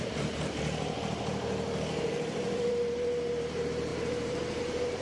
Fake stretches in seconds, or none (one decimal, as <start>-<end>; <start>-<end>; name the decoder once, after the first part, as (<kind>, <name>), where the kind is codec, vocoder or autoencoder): 0.0-5.0 (vocoder, BigVGAN v2)